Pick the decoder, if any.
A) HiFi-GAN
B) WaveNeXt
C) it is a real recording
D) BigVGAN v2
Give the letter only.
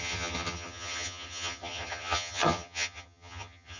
A